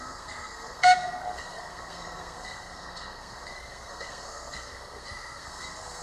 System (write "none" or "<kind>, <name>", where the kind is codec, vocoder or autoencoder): codec, SNAC